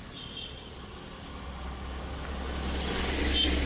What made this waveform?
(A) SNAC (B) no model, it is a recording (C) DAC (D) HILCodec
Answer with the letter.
B